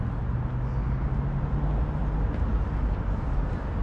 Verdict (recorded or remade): recorded